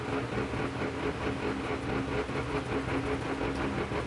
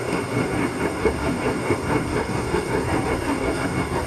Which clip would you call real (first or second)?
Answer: first